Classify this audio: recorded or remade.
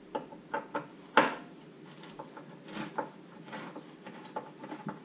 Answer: recorded